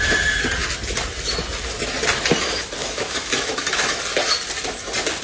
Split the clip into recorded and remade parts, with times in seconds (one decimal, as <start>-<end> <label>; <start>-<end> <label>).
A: 0.0-2.8 recorded; 2.8-4.0 remade; 4.0-5.2 recorded